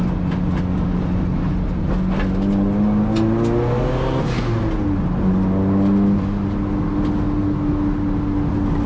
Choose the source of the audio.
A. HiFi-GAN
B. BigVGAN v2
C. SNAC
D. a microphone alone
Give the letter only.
D